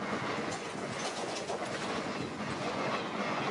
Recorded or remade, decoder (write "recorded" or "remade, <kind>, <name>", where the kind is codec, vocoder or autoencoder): remade, vocoder, Vocos